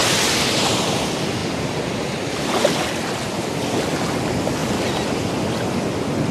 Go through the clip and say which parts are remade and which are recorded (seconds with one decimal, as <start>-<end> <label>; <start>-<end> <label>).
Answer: 0.0-1.4 recorded; 1.4-2.2 remade; 2.2-4.6 recorded; 4.6-5.3 remade; 5.3-6.3 recorded